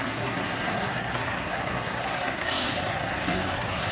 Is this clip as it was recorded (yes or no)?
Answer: no